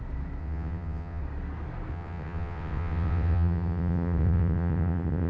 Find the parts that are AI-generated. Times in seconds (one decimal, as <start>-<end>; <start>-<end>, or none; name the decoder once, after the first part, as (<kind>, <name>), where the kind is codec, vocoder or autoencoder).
0.4-1.2 (vocoder, WaveNeXt); 1.9-5.3

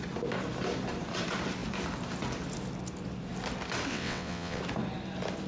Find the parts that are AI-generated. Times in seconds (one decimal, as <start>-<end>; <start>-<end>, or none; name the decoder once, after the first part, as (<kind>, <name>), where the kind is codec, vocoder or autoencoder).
3.9-4.6 (vocoder, WaveNeXt)

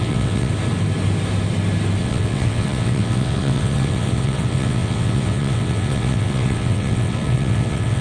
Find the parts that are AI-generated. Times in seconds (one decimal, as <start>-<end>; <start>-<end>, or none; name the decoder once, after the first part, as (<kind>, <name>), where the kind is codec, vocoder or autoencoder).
0.0-0.5 (vocoder, WaveNeXt); 2.0-8.0